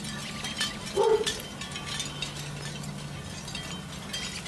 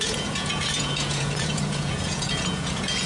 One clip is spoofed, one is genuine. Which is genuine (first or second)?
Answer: first